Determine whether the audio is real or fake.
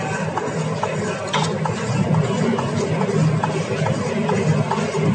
real